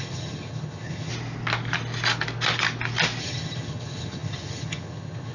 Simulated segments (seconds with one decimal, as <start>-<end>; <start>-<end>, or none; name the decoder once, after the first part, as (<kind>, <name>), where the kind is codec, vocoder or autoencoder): 0.0-1.1 (vocoder, HiFi-GAN); 3.2-5.3